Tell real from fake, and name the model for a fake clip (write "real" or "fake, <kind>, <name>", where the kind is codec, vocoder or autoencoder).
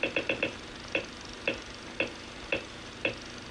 real